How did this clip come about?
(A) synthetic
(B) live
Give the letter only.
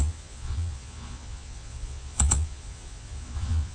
A